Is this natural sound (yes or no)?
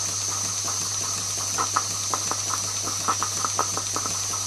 yes